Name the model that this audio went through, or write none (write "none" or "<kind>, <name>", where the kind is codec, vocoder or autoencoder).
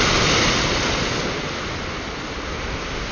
none